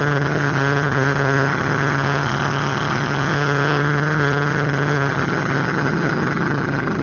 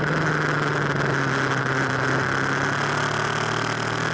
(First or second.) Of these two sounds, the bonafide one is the second